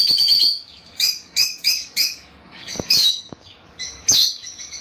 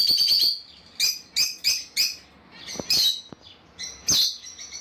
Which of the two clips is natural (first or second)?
second